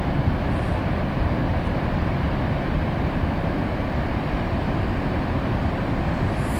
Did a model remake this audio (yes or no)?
yes